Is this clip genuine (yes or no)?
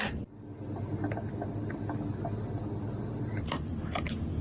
yes